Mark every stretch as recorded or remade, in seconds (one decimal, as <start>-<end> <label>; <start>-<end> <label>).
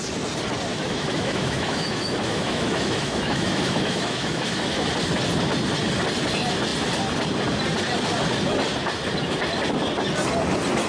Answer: 0.0-0.7 recorded; 0.7-4.9 remade; 4.9-10.9 recorded